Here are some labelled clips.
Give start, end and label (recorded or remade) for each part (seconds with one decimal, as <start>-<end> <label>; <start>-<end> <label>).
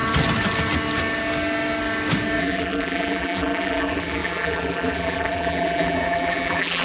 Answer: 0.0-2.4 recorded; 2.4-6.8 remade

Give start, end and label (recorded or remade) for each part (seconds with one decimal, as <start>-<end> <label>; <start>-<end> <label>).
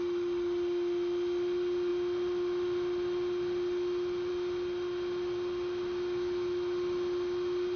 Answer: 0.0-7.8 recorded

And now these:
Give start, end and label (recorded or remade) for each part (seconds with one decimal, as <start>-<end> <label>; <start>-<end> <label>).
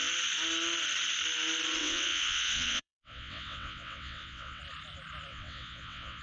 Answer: 0.0-1.8 recorded; 1.8-4.6 remade; 4.6-5.3 recorded; 5.3-6.2 remade